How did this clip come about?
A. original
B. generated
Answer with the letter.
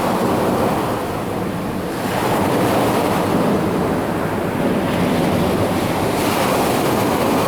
A